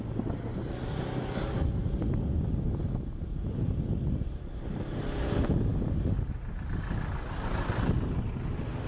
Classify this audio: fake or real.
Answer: real